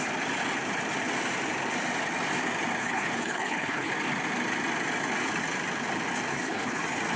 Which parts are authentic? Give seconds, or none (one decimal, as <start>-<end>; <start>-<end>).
0.0-2.8; 3.9-6.3; 6.8-7.2